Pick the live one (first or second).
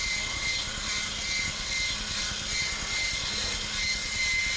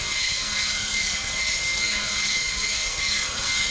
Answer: first